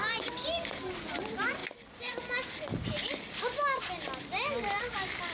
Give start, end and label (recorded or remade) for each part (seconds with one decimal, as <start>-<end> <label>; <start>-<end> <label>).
0.0-5.3 recorded